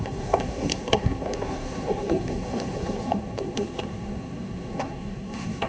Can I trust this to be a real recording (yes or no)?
no